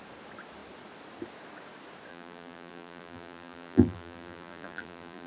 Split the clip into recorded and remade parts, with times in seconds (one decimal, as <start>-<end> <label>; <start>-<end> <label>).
0.0-2.1 recorded; 2.1-5.3 remade